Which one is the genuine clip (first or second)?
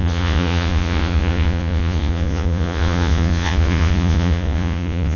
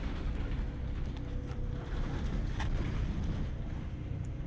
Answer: second